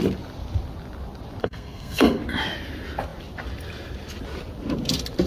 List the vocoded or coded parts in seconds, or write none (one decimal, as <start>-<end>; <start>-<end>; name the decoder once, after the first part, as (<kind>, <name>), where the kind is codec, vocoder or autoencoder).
1.4-2.2 (codec, SNAC)